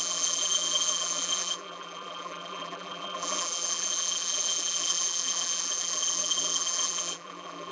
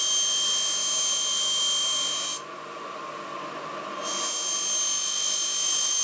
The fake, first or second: first